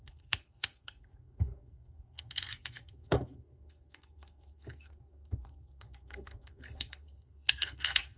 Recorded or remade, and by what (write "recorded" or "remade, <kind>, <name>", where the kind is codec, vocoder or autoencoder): remade, codec, SNAC